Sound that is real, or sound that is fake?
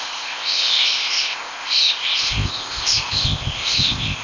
fake